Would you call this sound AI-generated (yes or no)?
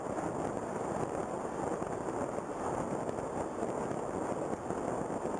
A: no